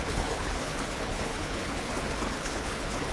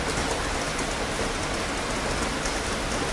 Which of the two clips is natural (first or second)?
second